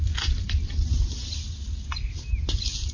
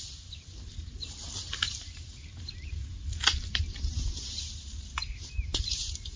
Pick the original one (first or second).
first